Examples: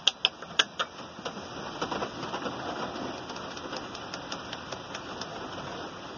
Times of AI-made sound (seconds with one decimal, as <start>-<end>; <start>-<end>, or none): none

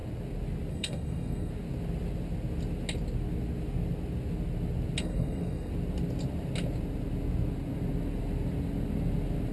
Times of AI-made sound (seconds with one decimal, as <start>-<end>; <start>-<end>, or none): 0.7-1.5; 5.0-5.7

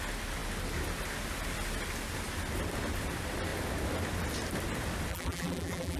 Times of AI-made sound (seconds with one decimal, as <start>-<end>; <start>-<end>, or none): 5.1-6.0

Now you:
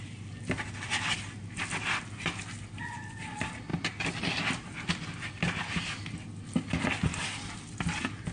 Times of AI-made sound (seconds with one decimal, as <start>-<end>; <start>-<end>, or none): none

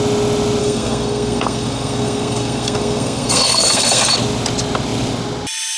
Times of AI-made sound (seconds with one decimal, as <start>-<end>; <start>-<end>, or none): 0.6-4.1